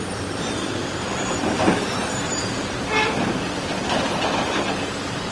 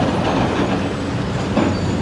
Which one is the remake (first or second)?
first